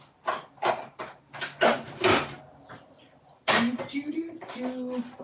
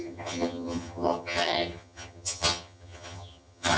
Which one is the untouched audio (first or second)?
first